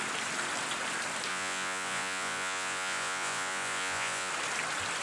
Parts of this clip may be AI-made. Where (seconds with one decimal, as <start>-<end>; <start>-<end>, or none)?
1.3-4.3